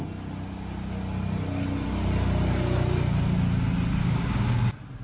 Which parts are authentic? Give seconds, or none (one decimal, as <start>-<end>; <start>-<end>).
0.0-4.0; 4.6-5.0